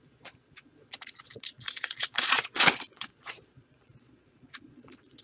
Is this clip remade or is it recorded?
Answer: remade